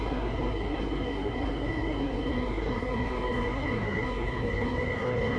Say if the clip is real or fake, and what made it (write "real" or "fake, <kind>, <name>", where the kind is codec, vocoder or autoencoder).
fake, codec, SNAC